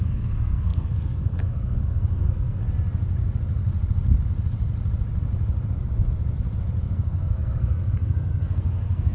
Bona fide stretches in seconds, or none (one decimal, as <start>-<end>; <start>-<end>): 2.6-6.8